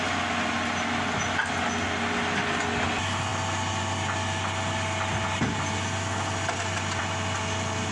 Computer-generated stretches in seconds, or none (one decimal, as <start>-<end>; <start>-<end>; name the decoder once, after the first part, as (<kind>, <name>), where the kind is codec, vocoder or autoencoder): none